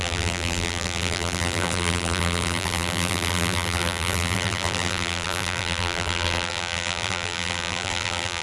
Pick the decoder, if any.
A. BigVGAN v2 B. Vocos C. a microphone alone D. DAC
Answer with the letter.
A